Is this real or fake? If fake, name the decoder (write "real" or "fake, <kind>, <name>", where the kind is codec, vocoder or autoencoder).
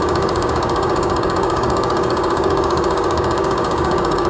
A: fake, codec, DAC